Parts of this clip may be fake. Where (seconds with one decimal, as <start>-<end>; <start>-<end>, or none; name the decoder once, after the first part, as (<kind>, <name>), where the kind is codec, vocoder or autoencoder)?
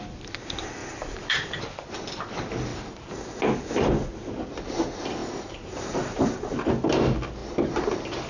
0.8-1.6 (vocoder, BigVGAN v2); 2.7-3.4; 5.2-6.7